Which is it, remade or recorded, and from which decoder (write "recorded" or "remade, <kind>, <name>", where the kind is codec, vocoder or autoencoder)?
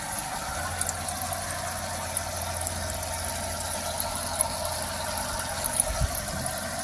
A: recorded